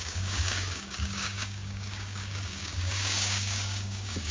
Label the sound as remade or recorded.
remade